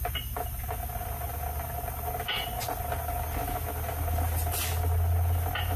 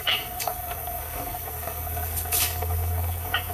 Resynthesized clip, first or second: second